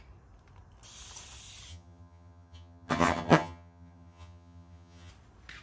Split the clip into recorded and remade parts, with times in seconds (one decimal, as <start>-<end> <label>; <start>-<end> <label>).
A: 0.0-1.7 recorded; 1.7-5.1 remade; 5.1-5.6 recorded